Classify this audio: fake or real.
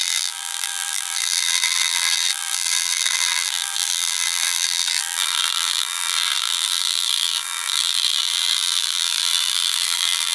fake